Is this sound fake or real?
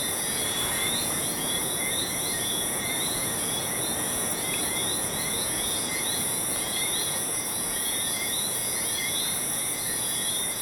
fake